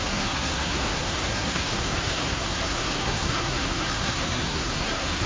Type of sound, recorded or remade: remade